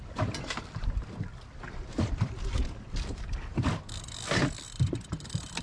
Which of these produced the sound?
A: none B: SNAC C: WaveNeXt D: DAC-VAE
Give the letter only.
A